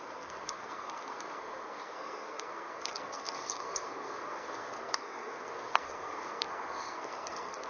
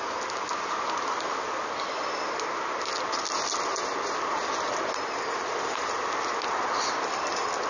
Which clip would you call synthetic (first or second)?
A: first